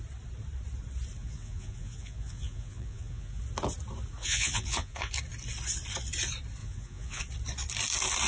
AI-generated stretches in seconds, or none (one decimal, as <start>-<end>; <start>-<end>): 1.2-3.4; 4.2-5.1; 6.6-7.2